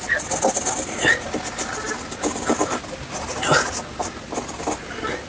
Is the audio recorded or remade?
recorded